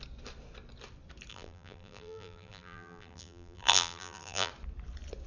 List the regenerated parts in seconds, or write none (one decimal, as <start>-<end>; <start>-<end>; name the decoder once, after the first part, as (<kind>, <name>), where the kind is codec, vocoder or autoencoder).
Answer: 1.3-4.5 (vocoder, BigVGAN v2)